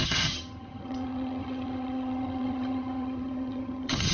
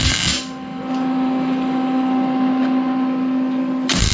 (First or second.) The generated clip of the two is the first